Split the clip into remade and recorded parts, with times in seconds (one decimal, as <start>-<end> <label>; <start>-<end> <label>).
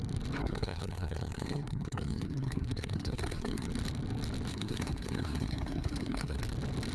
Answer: 0.0-0.4 recorded; 0.4-3.7 remade; 3.7-4.5 recorded; 4.5-6.4 remade; 6.4-6.9 recorded